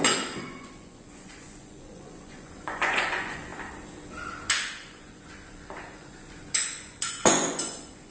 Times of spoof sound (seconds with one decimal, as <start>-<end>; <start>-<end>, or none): 0.0-3.5; 4.3-8.1